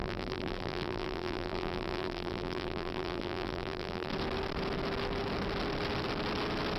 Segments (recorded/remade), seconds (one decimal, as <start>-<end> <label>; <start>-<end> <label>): 0.0-4.1 remade; 4.1-6.8 recorded